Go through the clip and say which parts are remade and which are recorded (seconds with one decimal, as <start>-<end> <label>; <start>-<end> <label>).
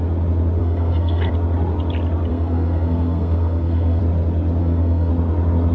0.0-0.6 recorded; 0.6-1.3 remade; 1.3-2.3 recorded; 2.3-4.0 remade; 4.0-4.6 recorded; 4.6-5.1 remade; 5.1-5.7 recorded